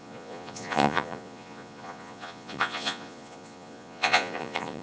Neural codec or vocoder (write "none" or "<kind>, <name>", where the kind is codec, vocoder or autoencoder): vocoder, Vocos